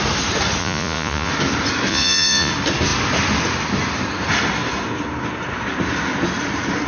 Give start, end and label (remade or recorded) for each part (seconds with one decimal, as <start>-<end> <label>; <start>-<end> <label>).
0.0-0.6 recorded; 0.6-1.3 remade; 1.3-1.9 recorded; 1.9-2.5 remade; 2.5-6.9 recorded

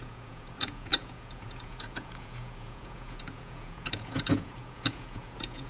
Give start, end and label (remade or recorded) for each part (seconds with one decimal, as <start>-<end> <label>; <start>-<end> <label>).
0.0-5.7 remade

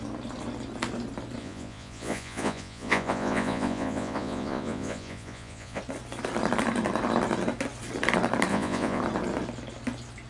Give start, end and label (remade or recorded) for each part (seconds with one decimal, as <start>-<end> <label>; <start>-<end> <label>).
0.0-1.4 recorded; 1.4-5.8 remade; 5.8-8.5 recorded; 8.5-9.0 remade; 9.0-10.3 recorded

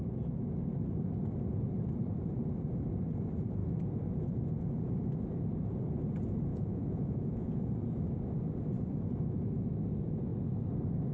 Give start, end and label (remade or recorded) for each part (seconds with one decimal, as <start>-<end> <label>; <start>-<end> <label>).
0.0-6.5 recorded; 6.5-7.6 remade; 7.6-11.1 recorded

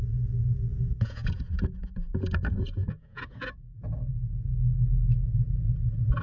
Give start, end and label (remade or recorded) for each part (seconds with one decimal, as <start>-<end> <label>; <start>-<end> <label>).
0.0-0.7 recorded; 0.7-4.1 remade; 4.1-6.2 recorded

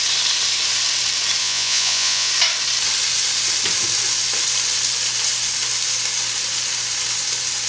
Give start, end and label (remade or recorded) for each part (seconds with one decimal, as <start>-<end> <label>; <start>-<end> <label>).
0.0-1.4 recorded; 1.4-2.3 remade; 2.3-7.7 recorded